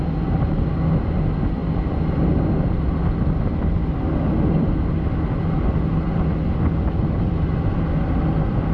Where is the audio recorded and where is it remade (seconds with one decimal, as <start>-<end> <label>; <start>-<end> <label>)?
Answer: 0.0-8.7 recorded